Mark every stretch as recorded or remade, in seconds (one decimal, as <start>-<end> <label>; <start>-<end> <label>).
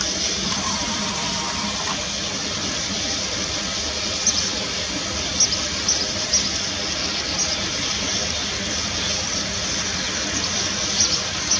0.0-11.6 recorded